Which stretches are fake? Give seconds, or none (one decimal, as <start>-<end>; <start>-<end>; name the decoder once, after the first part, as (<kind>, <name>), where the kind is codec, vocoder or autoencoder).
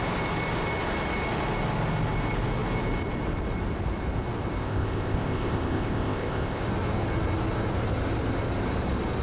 4.6-6.6 (codec, ZipCodec)